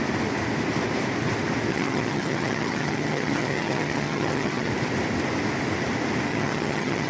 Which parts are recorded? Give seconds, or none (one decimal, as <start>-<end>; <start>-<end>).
0.0-1.7; 4.7-6.3